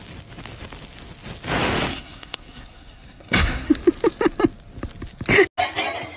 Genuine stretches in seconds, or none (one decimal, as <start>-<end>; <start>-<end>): 0.0-1.9; 3.7-6.2